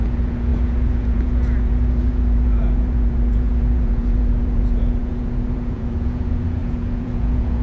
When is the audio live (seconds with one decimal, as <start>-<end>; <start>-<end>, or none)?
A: none